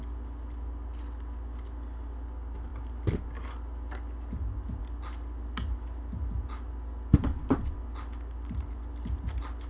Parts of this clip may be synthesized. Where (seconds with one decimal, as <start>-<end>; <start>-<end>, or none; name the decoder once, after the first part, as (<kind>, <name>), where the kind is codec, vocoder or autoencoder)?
none

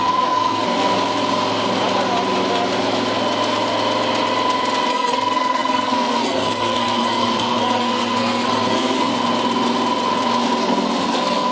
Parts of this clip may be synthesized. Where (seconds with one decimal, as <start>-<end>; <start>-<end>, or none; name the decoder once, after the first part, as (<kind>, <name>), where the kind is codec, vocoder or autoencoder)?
0.0-0.9 (codec, SNAC); 4.9-9.1; 10.6-11.5